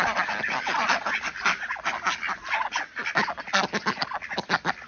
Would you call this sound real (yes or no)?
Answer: yes